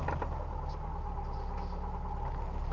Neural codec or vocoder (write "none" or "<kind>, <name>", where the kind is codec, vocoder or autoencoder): none